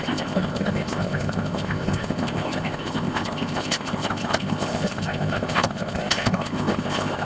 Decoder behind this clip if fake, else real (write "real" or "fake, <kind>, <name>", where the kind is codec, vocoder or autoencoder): fake, codec, ZipCodec